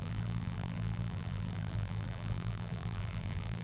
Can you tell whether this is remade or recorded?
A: remade